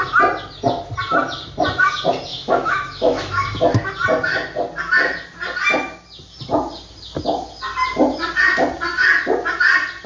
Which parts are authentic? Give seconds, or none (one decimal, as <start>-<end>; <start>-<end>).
0.0-2.3; 3.9-10.1